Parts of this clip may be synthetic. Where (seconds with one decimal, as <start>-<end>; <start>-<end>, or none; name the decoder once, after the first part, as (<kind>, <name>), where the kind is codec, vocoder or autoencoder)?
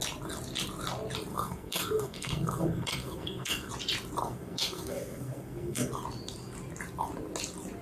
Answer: 1.3-3.7 (codec, SNAC); 4.2-5.9